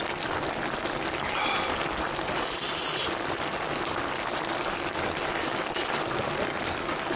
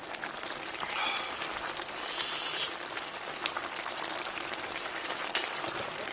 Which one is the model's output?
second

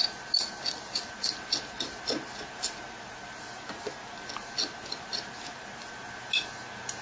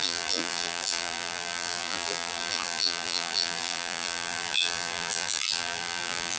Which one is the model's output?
second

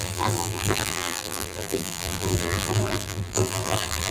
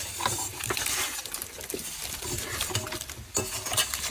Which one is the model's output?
first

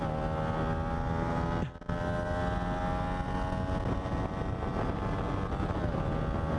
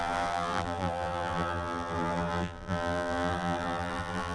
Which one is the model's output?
second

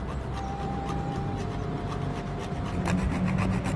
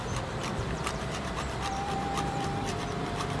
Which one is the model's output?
second